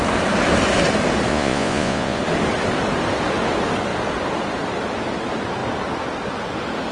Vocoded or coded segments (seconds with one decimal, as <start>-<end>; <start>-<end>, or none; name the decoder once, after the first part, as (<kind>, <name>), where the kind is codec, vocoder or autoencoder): 1.3-2.2 (vocoder, Vocos)